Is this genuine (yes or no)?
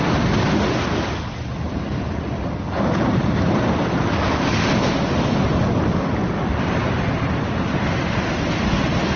yes